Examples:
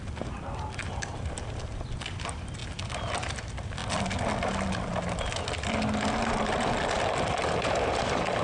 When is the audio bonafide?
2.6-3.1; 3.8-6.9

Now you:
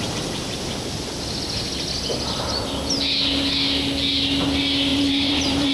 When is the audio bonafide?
0.0-4.9

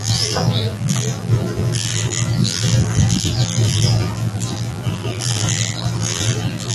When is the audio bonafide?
none

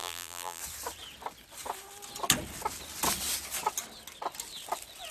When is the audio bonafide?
0.6-5.1